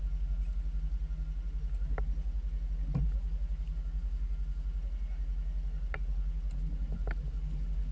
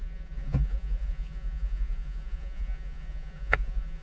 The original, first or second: first